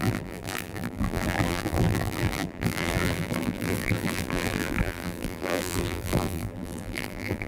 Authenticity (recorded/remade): remade